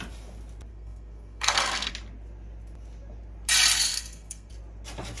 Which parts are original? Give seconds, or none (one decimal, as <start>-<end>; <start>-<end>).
0.0-0.7; 1.9-3.9; 4.5-5.2